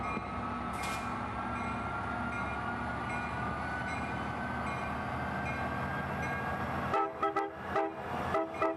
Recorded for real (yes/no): yes